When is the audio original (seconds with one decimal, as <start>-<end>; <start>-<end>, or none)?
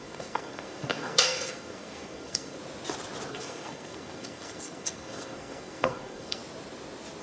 2.6-3.3; 6.4-7.2